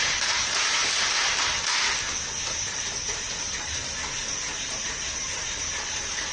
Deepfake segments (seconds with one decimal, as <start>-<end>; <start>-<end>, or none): 0.0-0.8; 2.5-3.8; 4.6-6.3